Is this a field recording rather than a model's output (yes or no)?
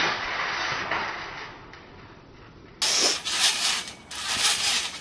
yes